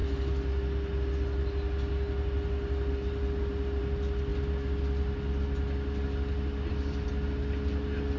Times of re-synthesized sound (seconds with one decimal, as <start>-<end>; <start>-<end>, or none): none